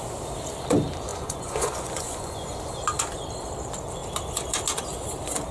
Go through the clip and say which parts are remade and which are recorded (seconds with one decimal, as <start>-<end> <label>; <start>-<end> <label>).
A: 0.0-1.1 recorded; 1.1-2.6 remade; 2.6-5.5 recorded